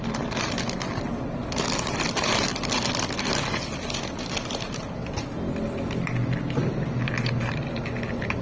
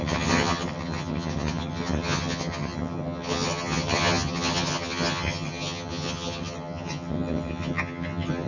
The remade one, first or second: second